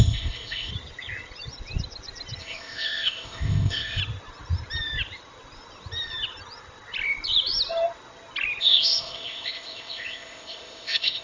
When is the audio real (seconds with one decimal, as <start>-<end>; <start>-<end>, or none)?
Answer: 0.7-2.4; 4.0-8.6